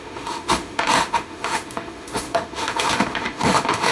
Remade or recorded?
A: remade